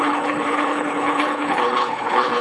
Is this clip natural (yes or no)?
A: no